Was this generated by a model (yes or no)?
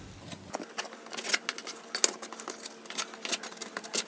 no